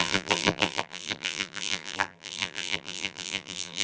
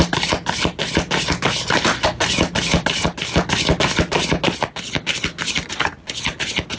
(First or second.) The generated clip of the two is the first